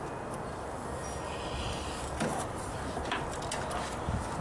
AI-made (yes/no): no